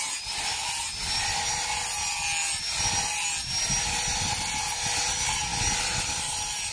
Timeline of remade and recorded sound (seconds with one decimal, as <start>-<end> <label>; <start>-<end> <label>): 0.0-6.7 recorded